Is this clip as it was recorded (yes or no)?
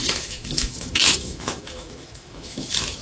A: no